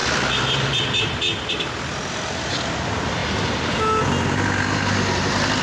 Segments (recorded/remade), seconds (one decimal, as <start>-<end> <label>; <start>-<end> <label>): 0.0-3.2 remade; 3.2-5.6 recorded